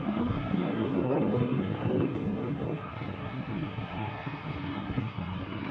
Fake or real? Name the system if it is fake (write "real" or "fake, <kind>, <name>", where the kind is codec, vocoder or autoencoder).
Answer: fake, codec, SNAC